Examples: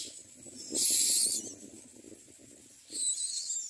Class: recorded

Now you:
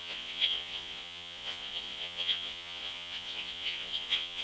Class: remade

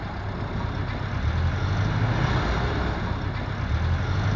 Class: recorded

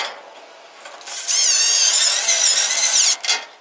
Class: recorded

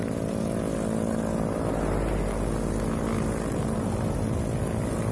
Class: recorded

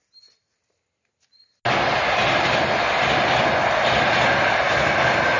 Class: recorded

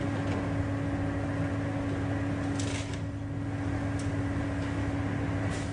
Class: recorded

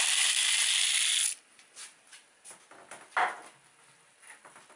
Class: recorded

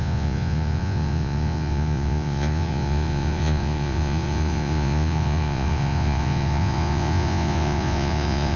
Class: remade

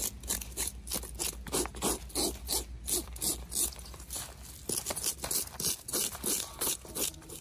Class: recorded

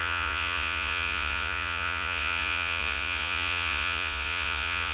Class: remade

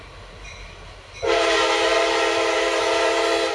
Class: recorded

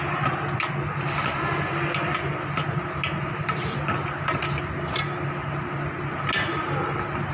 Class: recorded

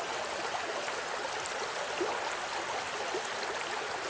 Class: recorded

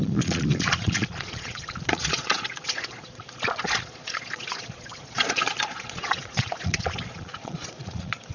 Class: remade